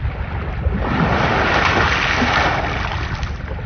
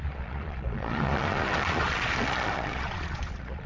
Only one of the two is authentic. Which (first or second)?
first